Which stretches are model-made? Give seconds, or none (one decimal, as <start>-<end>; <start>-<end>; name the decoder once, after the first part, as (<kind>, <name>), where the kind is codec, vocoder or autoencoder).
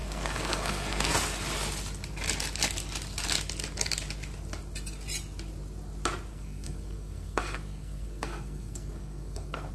0.0-1.1 (codec, SNAC); 6.3-9.7